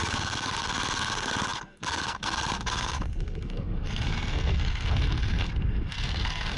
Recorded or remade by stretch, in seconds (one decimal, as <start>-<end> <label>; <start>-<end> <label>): 0.0-6.6 remade